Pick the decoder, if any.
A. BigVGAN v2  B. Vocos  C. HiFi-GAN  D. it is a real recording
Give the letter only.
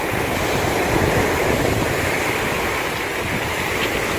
D